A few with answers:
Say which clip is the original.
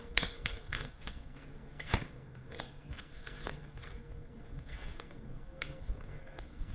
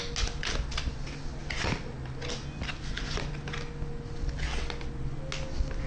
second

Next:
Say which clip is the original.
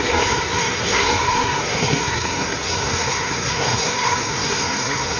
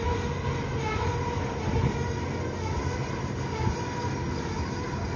second